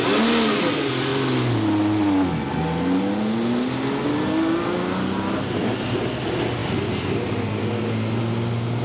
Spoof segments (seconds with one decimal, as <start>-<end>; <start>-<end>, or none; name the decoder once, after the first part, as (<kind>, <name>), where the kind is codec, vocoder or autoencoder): none